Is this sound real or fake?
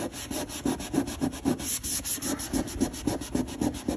real